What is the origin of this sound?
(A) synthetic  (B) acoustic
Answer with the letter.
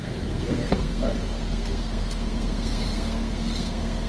A